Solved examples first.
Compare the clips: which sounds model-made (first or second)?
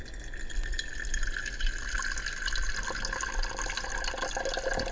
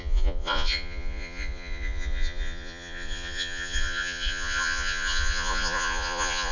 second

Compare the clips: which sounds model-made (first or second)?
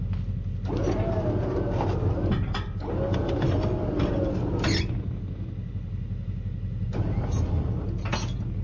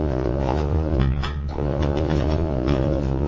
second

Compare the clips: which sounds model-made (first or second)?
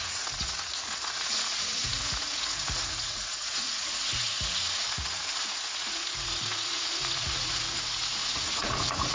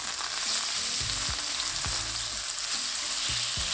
first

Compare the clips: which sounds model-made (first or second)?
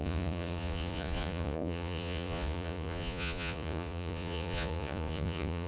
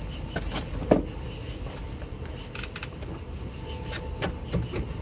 first